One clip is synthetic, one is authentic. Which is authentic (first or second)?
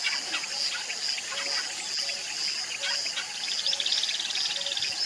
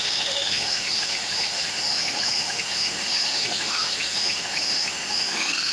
first